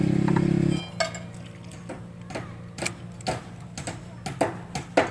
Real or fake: real